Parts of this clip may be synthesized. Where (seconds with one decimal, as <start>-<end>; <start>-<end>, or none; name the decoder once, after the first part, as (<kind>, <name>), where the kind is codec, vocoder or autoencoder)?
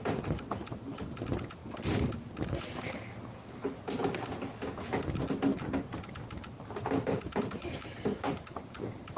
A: none